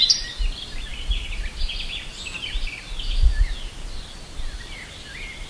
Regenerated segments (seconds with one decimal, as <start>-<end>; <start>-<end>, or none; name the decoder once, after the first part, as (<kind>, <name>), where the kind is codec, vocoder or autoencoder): none